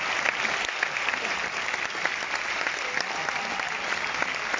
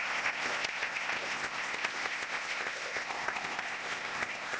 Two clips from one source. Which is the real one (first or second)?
first